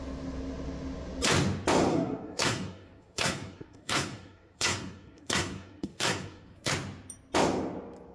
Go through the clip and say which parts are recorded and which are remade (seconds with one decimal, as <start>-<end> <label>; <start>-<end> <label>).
0.0-1.9 recorded; 1.9-6.7 remade; 6.7-8.1 recorded

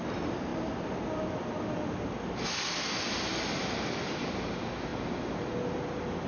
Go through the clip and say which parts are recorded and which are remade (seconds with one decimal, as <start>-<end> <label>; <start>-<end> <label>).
0.0-6.3 recorded

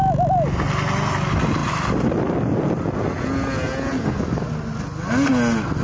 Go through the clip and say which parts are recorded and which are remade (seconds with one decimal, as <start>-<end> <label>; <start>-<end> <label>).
0.0-5.8 recorded